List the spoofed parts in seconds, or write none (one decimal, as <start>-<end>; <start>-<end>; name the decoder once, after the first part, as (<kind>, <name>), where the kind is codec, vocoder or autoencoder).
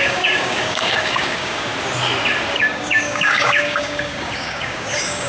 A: 0.0-1.7 (codec, DAC); 2.5-5.3